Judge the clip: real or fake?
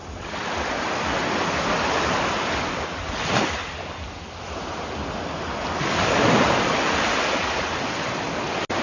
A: real